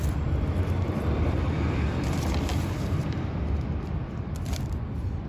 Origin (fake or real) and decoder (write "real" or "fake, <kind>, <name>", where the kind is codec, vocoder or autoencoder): fake, vocoder, BigVGAN v2